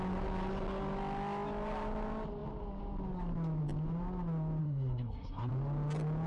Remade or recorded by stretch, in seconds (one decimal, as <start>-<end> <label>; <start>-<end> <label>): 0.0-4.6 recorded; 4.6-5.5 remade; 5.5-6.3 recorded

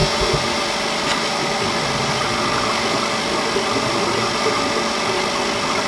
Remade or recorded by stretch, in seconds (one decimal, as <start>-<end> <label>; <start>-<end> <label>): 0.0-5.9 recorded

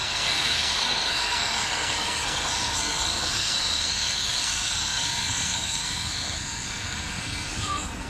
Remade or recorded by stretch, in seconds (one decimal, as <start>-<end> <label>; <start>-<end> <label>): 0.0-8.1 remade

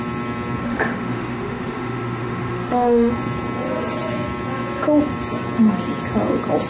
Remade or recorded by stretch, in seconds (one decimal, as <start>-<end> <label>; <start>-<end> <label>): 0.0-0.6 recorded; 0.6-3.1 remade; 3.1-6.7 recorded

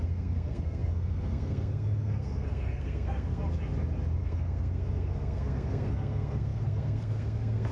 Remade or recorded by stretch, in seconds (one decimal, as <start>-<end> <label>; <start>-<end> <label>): 0.0-3.4 remade; 3.4-4.2 recorded; 4.2-7.7 remade

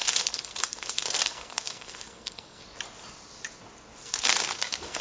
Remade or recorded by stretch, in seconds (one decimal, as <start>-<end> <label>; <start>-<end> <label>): 0.0-2.6 remade; 2.6-4.0 recorded; 4.0-5.0 remade

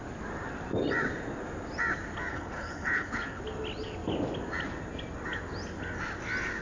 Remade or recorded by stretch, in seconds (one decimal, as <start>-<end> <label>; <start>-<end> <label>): 0.0-2.3 recorded; 2.3-3.4 remade; 3.4-6.6 recorded

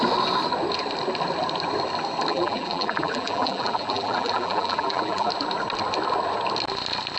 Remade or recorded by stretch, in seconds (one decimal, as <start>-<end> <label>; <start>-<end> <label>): 0.0-2.3 recorded; 2.3-5.3 remade; 5.3-7.2 recorded